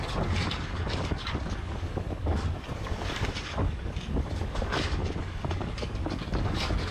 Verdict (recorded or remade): remade